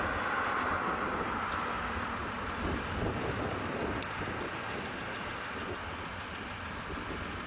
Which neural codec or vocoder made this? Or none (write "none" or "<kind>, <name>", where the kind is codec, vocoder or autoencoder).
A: none